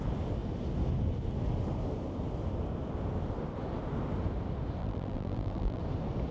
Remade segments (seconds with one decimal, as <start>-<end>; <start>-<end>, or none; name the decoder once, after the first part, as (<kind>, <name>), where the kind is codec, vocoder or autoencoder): 4.8-5.8 (vocoder, BigVGAN v2)